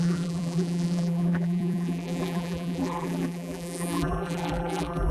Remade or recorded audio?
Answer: remade